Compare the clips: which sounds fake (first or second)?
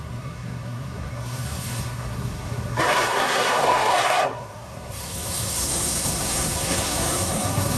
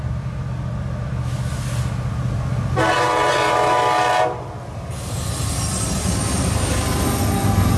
first